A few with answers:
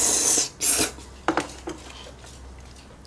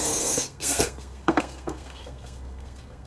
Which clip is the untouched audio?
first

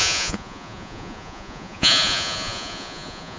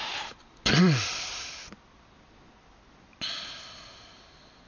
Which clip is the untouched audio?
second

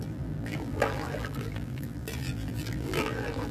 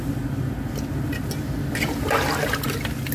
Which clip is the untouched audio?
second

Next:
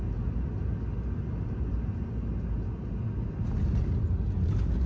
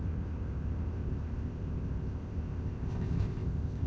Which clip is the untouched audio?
first